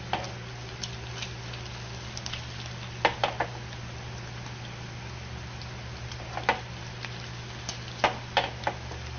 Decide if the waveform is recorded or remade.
recorded